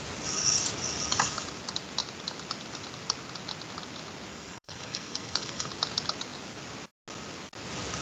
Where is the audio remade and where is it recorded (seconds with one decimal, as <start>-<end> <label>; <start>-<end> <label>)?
0.0-4.3 recorded; 4.3-5.7 remade; 5.7-8.0 recorded